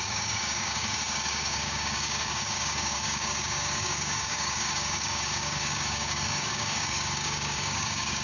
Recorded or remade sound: remade